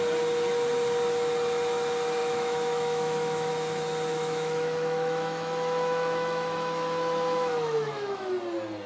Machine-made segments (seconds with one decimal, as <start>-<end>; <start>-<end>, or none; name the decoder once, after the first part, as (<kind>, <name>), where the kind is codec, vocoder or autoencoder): 2.2-3.5 (autoencoder, DAC-VAE); 4.1-8.3

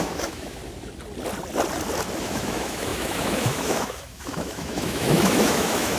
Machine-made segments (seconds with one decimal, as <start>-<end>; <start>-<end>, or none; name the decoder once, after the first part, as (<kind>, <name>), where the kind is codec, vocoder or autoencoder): 0.0-0.6 (autoencoder, DAC-VAE); 2.2-6.0